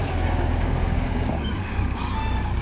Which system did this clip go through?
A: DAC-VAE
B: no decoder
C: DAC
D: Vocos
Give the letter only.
C